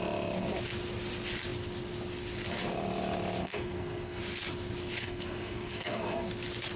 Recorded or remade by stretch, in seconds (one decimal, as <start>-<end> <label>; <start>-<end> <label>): 0.0-3.4 recorded; 3.4-4.2 remade; 4.2-5.0 recorded; 5.0-6.3 remade; 6.3-6.8 recorded